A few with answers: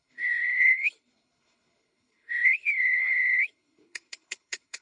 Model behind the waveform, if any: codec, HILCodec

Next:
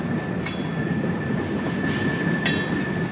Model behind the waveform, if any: none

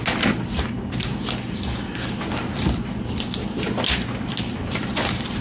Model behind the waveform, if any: none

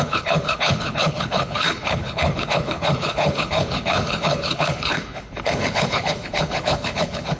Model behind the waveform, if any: codec, HILCodec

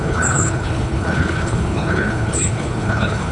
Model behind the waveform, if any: codec, HILCodec